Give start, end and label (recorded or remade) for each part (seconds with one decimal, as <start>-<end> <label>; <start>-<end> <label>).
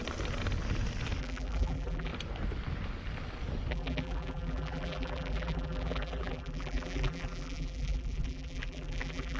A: 0.0-1.2 recorded; 1.2-2.1 remade; 2.1-3.7 recorded; 3.7-9.4 remade